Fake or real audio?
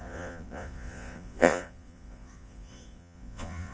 fake